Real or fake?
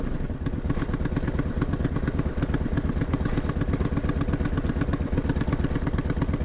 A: real